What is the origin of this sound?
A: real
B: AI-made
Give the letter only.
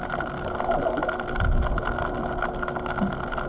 A